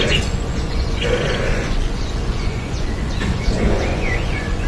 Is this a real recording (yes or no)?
no